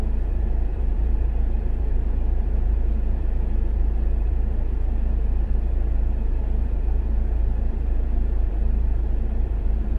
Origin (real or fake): fake